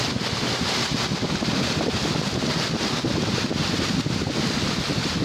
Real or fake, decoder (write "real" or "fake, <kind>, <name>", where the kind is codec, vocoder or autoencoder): real